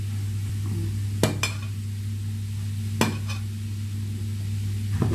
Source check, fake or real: real